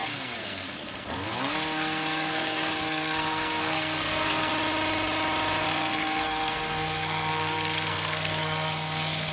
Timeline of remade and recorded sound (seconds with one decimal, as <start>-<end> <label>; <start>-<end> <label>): 0.0-4.5 remade; 4.5-5.6 recorded; 5.6-9.3 remade